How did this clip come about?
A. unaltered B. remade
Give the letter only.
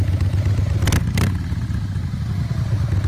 A